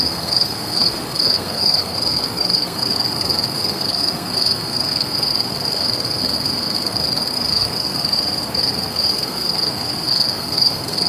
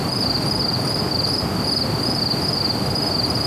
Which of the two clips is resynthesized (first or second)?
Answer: first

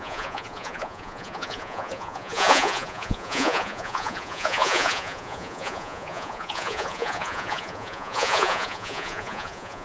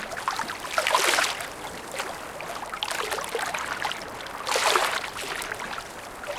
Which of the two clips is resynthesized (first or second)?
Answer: first